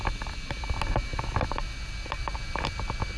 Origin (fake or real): real